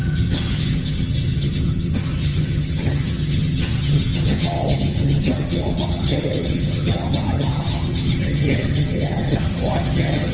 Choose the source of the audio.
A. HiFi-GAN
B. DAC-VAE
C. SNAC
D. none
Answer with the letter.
A